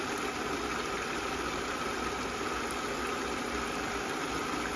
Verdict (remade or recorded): recorded